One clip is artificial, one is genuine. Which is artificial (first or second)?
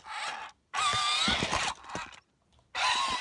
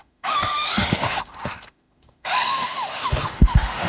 second